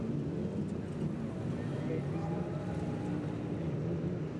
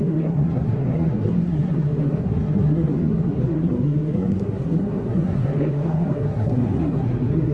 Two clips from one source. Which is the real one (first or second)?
first